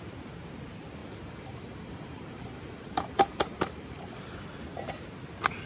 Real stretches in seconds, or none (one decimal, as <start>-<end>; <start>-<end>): 0.0-1.0; 4.4-5.7